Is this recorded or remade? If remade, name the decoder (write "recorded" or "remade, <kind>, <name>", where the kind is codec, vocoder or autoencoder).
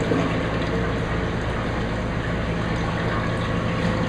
recorded